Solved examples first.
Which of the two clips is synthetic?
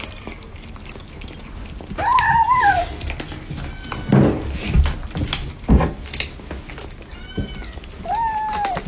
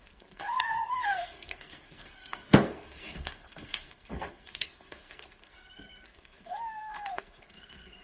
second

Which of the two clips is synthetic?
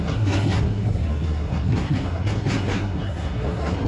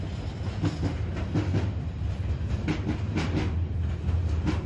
first